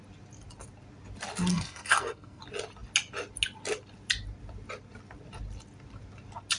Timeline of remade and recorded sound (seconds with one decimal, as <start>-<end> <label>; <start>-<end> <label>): 0.0-1.5 recorded; 1.5-2.4 remade; 2.4-6.6 recorded